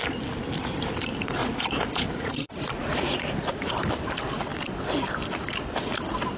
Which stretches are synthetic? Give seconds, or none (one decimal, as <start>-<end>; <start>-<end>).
1.4-3.7